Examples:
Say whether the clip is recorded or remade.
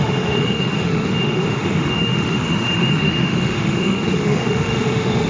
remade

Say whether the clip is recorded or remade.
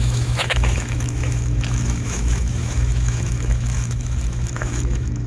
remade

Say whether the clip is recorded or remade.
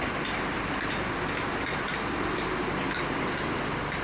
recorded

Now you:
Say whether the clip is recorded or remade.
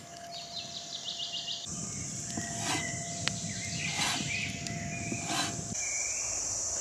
recorded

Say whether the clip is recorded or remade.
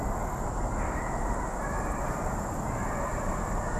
recorded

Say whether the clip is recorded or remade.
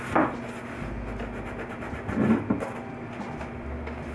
recorded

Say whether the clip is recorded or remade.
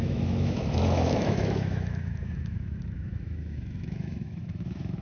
remade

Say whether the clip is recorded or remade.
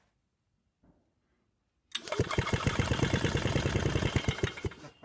recorded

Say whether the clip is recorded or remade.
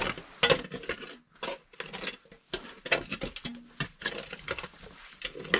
recorded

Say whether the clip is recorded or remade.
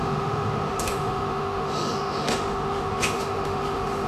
remade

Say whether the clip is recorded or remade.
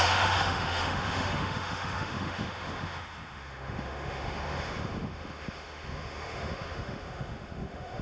remade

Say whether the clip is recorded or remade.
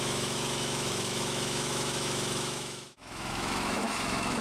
remade